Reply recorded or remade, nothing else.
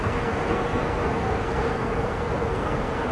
remade